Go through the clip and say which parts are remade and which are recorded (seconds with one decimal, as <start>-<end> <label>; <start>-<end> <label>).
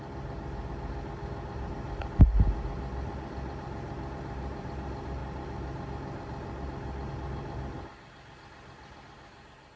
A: 0.0-9.8 recorded